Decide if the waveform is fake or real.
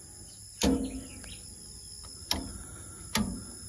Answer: real